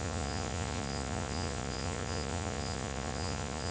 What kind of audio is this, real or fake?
fake